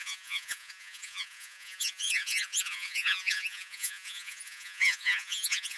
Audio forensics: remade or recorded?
remade